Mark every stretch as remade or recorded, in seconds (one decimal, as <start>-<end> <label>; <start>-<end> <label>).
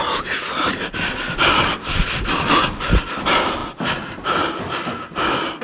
0.0-5.6 recorded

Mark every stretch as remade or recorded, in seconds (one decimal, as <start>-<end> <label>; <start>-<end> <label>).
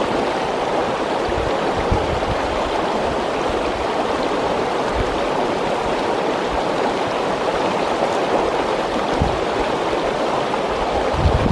0.0-11.5 recorded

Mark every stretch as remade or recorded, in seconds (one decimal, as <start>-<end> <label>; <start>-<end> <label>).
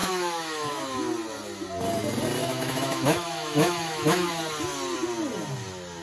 0.0-0.8 remade; 0.8-2.4 recorded; 2.4-4.3 remade; 4.3-6.0 recorded